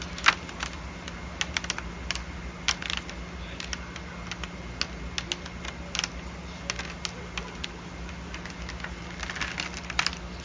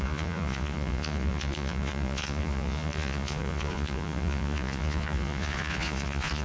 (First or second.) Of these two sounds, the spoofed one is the second